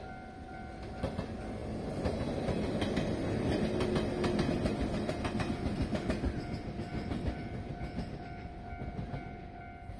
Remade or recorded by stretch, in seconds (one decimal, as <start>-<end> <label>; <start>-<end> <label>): 0.0-6.9 recorded; 6.9-8.5 remade; 8.5-10.0 recorded

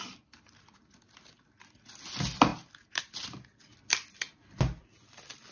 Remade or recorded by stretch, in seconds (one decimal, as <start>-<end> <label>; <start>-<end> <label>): 0.0-5.5 recorded

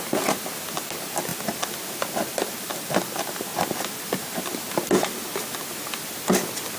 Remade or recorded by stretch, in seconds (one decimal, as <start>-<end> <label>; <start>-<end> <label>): 0.0-6.8 recorded

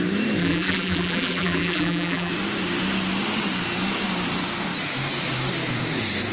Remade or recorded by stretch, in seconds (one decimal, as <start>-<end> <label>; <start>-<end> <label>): 0.0-0.4 recorded; 0.4-2.3 remade; 2.3-6.3 recorded

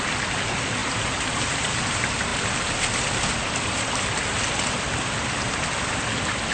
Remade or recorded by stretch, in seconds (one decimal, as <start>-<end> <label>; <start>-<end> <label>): 0.0-0.8 recorded; 0.8-1.8 remade; 1.8-6.5 recorded

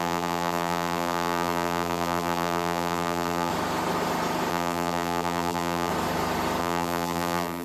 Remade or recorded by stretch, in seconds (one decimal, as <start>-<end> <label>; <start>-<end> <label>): 0.0-3.5 remade; 3.5-4.5 recorded; 4.5-5.9 remade; 5.9-6.6 recorded; 6.6-7.6 remade

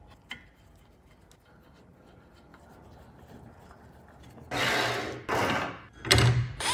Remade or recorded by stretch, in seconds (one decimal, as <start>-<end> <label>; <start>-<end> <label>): 0.0-6.7 recorded

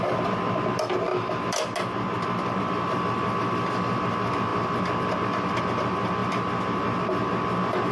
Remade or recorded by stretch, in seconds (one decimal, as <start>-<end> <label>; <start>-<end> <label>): 0.0-7.9 recorded